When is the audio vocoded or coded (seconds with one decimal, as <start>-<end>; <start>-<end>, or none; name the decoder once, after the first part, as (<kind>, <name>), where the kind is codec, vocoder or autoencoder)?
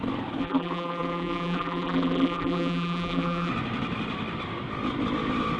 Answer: 0.4-3.5 (vocoder, BigVGAN v2)